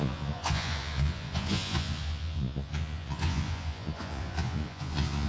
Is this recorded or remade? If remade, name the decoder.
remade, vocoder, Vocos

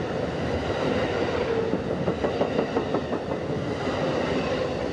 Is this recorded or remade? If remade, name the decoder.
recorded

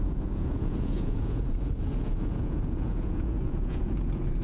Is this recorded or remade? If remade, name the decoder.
remade, vocoder, Vocos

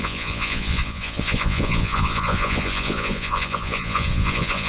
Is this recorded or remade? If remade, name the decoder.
remade, vocoder, Vocos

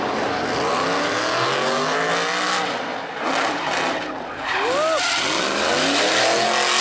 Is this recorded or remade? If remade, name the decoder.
recorded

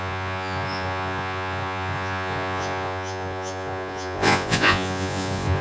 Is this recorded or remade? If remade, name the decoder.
remade, vocoder, Vocos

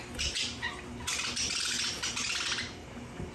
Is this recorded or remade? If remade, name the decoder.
recorded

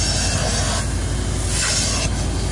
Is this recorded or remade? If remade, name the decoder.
recorded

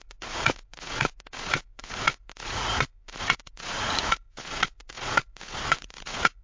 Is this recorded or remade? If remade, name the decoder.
remade, vocoder, Vocos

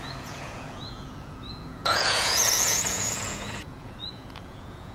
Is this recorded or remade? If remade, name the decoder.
remade, vocoder, Vocos